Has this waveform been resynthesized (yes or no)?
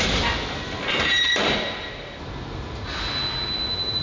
no